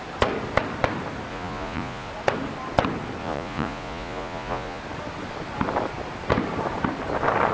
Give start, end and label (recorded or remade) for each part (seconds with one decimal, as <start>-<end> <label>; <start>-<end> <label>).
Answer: 0.0-1.3 recorded; 1.3-2.1 remade; 2.1-3.2 recorded; 3.2-4.8 remade; 4.8-7.5 recorded